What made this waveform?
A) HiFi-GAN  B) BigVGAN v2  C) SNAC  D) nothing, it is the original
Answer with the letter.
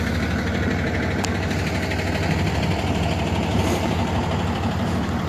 D